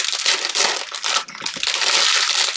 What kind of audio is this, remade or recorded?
recorded